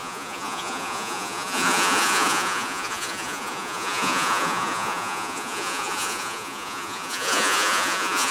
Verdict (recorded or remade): remade